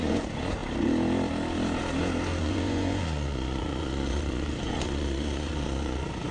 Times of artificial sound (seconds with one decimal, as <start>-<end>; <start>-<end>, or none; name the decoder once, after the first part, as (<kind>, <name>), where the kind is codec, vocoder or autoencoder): 0.0-0.6 (vocoder, Vocos); 2.4-6.3